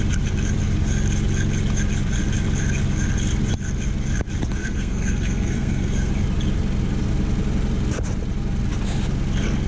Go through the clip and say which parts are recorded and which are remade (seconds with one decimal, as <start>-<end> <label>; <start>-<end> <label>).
0.0-4.6 recorded; 4.6-6.1 remade; 6.1-9.7 recorded